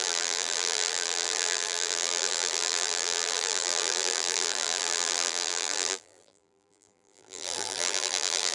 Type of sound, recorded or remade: remade